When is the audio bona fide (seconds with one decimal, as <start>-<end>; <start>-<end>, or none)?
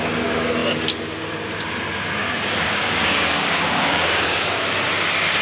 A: 0.0-2.2; 4.6-5.4